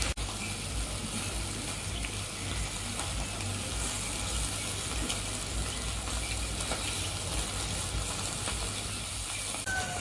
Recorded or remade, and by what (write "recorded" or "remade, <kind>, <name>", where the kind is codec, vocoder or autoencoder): recorded